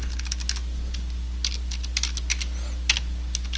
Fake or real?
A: real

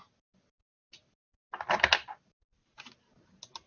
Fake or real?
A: real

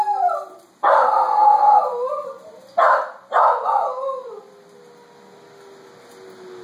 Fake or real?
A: real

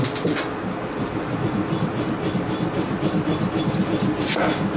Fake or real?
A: real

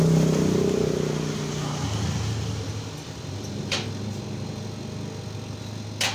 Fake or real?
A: real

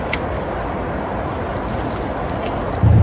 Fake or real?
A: real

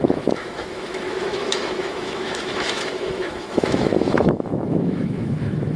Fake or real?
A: fake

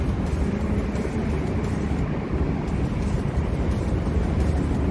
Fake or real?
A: real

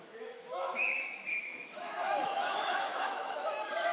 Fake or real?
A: fake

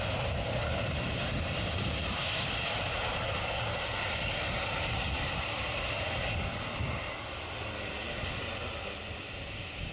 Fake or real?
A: real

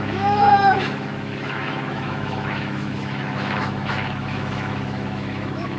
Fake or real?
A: fake